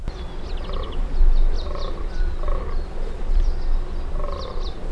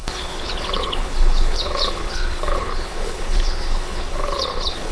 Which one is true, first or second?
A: first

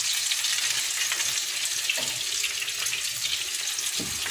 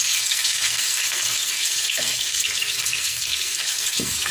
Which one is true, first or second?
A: first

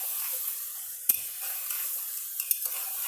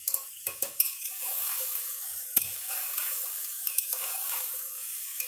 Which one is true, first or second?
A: first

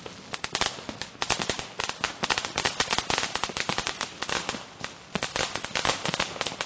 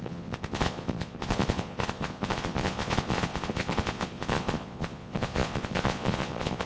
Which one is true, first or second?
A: first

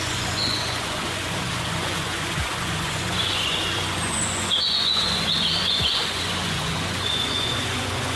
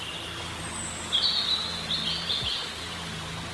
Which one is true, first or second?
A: second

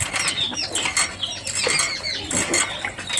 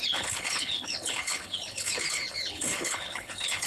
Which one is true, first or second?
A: first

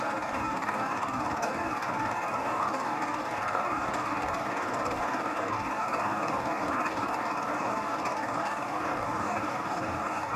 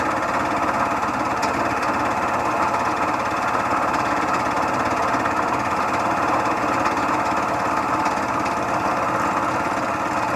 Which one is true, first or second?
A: second